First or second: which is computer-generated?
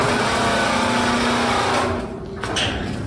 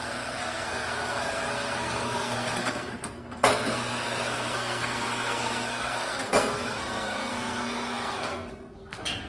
second